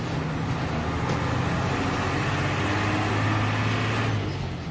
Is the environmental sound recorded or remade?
recorded